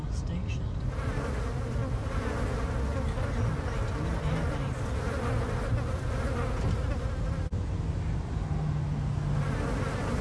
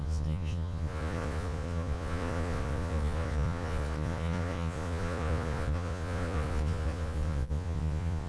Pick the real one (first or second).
first